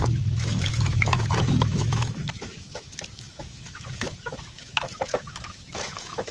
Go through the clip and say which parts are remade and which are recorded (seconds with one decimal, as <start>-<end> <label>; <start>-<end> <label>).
0.0-6.3 remade

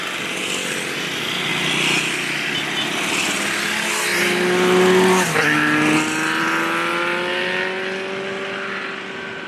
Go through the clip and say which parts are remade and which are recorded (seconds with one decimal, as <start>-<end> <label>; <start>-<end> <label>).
0.0-9.5 recorded

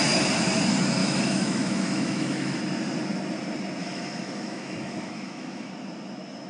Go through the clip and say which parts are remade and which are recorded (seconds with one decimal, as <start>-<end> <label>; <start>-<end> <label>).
0.0-1.0 recorded; 1.0-2.6 remade; 2.6-3.8 recorded; 3.8-5.7 remade; 5.7-6.5 recorded

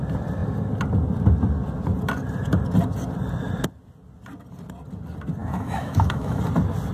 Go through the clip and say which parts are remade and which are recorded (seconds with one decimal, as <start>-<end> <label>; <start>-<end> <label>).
0.0-5.4 recorded; 5.4-6.4 remade; 6.4-6.9 recorded

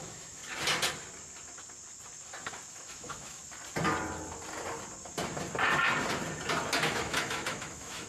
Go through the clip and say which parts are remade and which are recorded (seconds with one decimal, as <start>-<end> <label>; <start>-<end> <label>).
0.0-0.4 remade; 0.4-2.7 recorded; 2.7-3.4 remade; 3.4-6.8 recorded; 6.8-8.1 remade

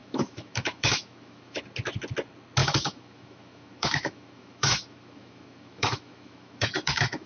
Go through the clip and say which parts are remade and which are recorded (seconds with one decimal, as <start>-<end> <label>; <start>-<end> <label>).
0.0-1.6 remade; 1.6-2.6 recorded; 2.6-7.3 remade

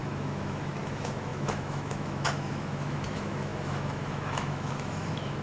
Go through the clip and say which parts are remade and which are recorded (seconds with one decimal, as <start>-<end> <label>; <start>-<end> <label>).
0.0-5.4 remade